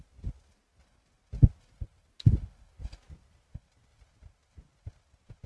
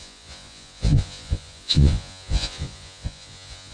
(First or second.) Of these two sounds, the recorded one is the first